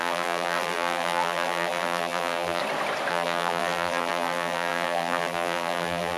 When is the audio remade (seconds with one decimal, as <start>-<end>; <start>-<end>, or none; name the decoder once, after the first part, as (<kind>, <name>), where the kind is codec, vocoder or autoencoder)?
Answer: 0.0-2.6 (vocoder, BigVGAN v2); 3.1-6.2